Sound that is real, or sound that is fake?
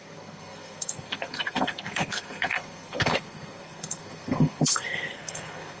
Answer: fake